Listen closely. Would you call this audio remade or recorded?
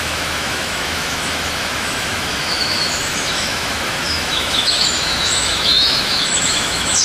remade